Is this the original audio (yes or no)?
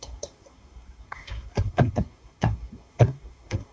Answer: no